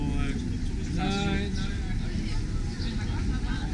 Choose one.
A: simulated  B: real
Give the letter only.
B